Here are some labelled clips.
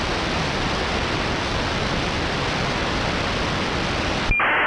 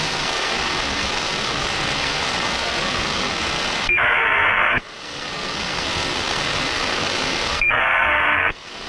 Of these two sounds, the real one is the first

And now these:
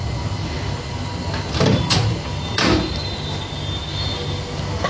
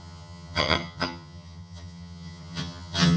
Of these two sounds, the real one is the first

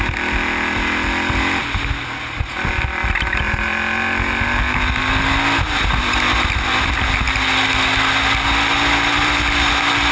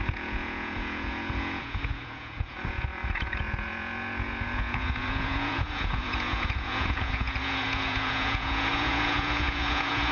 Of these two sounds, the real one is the first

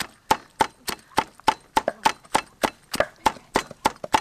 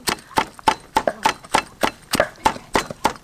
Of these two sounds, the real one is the first